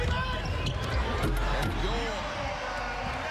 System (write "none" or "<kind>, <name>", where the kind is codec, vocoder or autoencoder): none